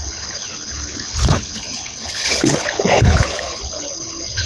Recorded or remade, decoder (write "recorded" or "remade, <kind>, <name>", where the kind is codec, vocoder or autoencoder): remade, codec, HILCodec